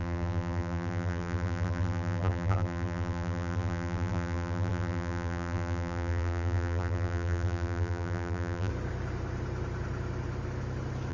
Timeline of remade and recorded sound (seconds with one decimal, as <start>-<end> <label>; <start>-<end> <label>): 0.0-8.7 remade; 8.7-11.1 recorded